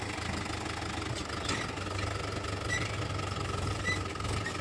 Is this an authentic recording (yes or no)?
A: yes